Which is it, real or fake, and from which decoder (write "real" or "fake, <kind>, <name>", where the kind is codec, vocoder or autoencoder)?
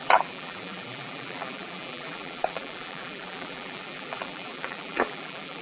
fake, vocoder, BigVGAN v2